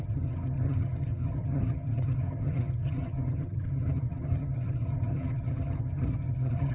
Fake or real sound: fake